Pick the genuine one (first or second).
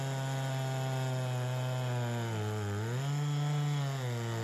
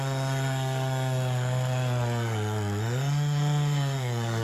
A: first